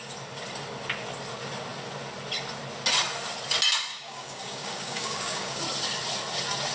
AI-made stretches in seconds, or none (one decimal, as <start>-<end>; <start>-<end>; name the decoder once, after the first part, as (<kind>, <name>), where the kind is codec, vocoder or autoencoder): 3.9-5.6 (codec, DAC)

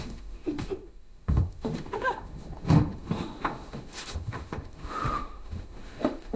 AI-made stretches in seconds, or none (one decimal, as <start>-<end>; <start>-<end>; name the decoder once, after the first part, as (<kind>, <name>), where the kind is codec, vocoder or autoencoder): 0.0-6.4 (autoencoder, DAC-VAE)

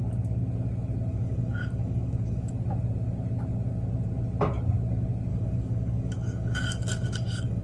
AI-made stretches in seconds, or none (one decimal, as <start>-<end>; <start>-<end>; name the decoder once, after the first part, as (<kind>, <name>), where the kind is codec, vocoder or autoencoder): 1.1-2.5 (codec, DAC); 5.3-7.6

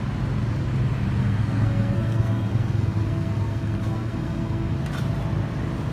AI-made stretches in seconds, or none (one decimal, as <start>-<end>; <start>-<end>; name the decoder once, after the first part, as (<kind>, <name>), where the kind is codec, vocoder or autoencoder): 1.2-4.7 (codec, SNAC)

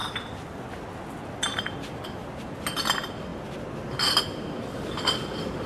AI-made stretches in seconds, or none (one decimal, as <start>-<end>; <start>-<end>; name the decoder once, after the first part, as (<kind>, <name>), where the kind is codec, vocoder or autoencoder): none

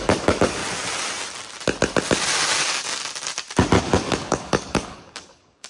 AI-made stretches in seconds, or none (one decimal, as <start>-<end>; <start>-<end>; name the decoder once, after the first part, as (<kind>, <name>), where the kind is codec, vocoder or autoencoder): 0.0-0.6 (codec, DAC); 2.6-3.0; 3.8-5.7